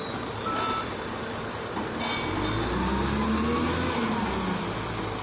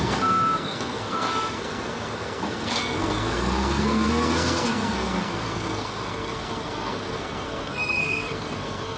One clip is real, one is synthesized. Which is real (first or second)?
first